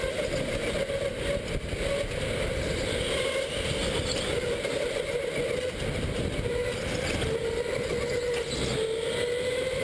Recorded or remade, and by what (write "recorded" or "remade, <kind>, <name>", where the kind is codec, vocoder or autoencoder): recorded